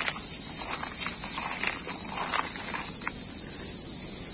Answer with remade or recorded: recorded